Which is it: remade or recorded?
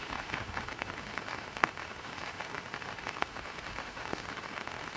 remade